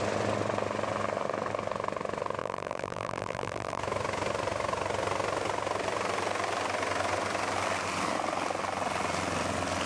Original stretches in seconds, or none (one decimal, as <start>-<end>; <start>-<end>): 0.0-2.4; 3.8-9.9